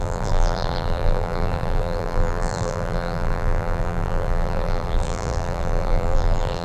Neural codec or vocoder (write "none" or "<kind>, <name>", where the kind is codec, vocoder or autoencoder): vocoder, BigVGAN v2